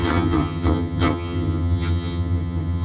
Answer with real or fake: fake